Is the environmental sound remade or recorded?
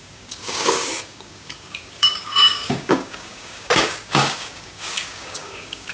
remade